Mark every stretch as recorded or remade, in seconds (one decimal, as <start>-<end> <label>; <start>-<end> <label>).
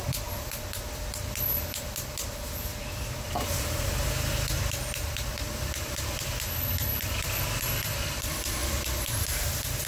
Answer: 0.0-9.9 remade